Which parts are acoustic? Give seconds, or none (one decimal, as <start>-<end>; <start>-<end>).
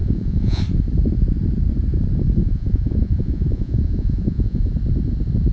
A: 0.6-2.4; 4.7-5.5